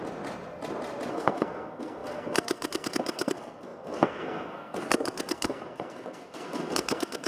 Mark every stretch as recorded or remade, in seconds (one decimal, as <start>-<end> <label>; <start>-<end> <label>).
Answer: 0.0-1.1 recorded; 1.1-7.3 remade

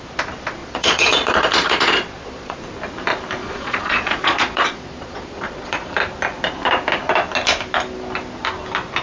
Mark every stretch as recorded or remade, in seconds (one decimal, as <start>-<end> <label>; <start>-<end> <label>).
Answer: 0.0-0.6 recorded; 0.6-2.6 remade; 2.6-3.4 recorded; 3.4-5.9 remade; 5.9-9.0 recorded

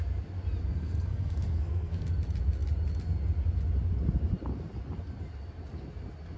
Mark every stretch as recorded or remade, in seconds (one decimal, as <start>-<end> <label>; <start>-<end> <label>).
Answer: 0.0-0.8 recorded; 0.8-2.1 remade; 2.1-6.4 recorded

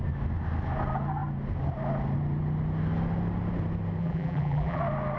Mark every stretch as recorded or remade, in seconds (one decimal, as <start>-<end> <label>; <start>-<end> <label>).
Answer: 0.0-4.0 recorded; 4.0-4.8 remade; 4.8-5.2 recorded

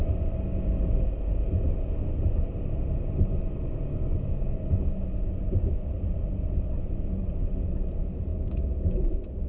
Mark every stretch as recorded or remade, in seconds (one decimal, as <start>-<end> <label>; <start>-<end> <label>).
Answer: 0.0-3.9 recorded; 3.9-4.8 remade; 4.8-8.3 recorded; 8.3-9.0 remade; 9.0-9.5 recorded

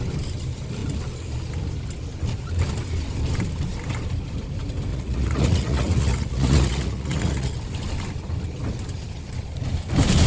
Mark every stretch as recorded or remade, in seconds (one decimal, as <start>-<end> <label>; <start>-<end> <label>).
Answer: 0.0-4.9 recorded; 4.9-7.5 remade; 7.5-10.3 recorded

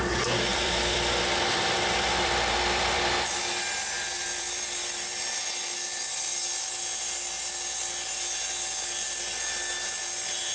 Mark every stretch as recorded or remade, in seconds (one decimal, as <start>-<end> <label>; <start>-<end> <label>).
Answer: 0.0-0.5 recorded; 0.5-5.3 remade; 5.3-10.5 recorded